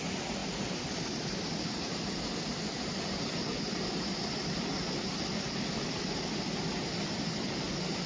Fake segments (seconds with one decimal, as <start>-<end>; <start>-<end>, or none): 0.4-1.0